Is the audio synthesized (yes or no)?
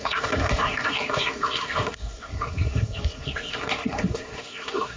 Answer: yes